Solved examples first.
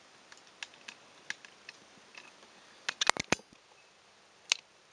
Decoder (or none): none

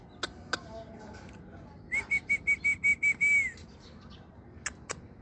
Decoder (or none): none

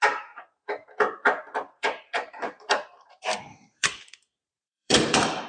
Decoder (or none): vocoder, BigVGAN v2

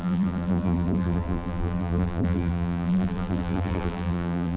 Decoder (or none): vocoder, BigVGAN v2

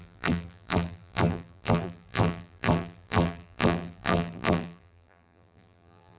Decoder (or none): vocoder, BigVGAN v2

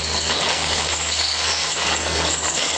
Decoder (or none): codec, SNAC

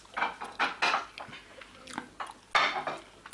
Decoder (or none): none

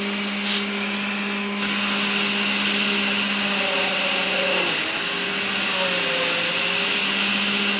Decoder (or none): none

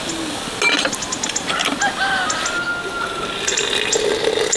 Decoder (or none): none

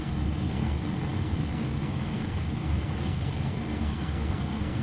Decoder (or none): codec, SNAC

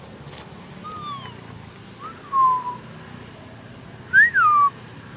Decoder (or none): none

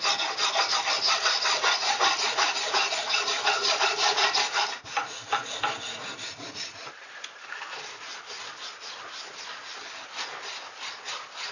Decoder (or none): none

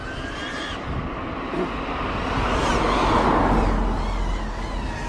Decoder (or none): none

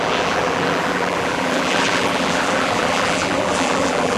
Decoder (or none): vocoder, BigVGAN v2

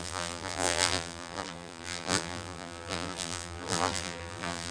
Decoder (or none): vocoder, BigVGAN v2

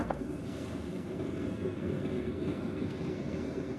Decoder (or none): codec, SNAC